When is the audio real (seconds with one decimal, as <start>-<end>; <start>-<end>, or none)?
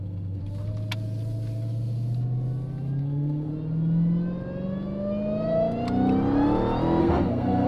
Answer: 0.4-3.0; 3.5-7.0